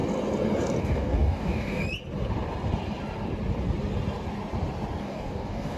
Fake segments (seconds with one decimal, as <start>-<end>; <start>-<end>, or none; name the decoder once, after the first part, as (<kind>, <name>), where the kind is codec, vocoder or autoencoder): 0.8-1.8 (codec, DAC); 5.0-5.8